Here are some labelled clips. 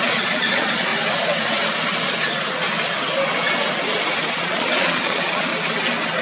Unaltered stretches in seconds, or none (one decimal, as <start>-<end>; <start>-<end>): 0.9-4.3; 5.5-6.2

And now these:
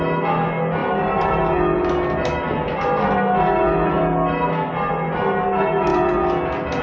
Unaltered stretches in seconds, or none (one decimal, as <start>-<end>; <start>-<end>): 0.0-6.8

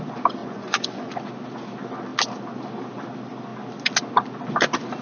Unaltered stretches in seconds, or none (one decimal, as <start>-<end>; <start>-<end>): 0.0-0.4; 1.1-5.0

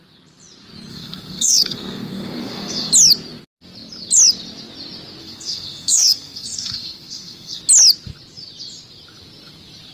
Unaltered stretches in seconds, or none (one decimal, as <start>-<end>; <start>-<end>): 0.0-0.9; 2.9-5.2; 7.6-9.9